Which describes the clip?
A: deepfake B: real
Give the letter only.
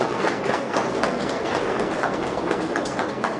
A